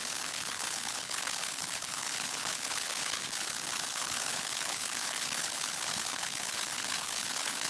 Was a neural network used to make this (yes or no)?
yes